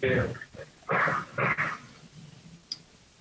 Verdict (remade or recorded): recorded